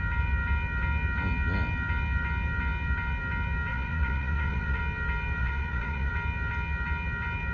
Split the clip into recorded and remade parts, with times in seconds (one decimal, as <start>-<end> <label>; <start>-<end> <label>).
0.0-3.7 recorded; 3.7-4.8 remade; 4.8-5.4 recorded; 5.4-6.1 remade; 6.1-7.5 recorded

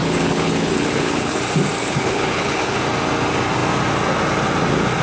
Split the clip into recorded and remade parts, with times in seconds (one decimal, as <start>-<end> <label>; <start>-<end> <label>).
0.0-1.4 remade; 1.4-1.8 recorded; 1.8-2.8 remade; 2.8-5.0 recorded

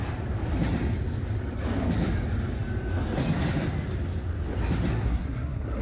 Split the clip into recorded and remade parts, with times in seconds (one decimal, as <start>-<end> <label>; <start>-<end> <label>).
0.0-4.9 recorded; 4.9-5.8 remade